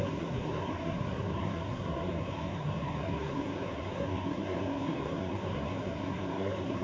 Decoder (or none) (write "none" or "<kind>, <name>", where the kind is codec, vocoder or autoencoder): codec, SNAC